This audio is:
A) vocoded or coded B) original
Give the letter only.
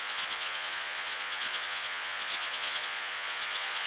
A